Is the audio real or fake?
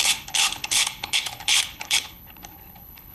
fake